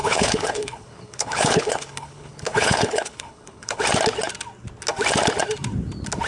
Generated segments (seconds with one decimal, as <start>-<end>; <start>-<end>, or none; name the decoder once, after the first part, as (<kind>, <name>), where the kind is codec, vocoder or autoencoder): 0.0-3.8 (codec, HILCodec)